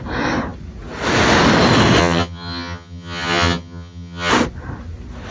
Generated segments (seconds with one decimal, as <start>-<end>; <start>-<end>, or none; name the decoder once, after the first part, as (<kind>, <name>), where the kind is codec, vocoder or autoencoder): 2.0-4.3 (vocoder, HiFi-GAN)